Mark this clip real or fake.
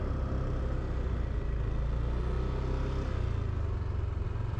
real